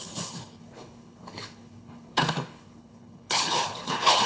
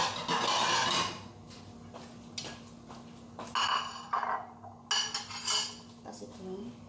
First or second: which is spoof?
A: first